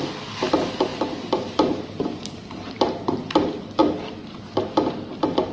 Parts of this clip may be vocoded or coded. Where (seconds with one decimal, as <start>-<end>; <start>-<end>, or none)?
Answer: 0.9-3.2; 3.8-4.4